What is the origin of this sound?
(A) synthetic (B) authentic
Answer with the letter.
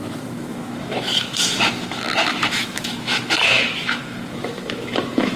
A